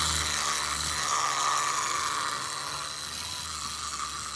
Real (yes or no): yes